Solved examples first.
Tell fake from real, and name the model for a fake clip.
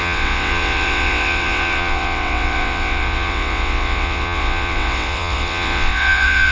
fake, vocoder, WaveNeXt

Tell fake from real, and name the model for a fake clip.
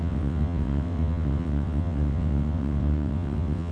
fake, vocoder, WaveNeXt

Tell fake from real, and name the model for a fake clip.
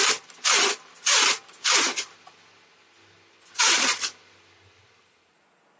real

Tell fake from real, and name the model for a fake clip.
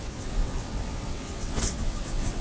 fake, vocoder, WaveNeXt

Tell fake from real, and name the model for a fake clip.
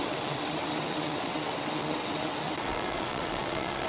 fake, vocoder, WaveNeXt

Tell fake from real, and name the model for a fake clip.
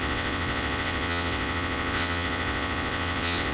fake, vocoder, WaveNeXt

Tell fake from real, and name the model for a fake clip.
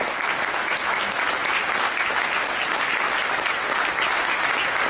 real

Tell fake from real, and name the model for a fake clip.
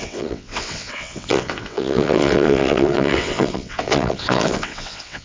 fake, vocoder, WaveNeXt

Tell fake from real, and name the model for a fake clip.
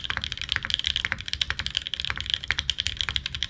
real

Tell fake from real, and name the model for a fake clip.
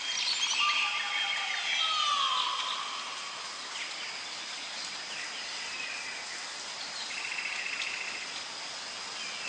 real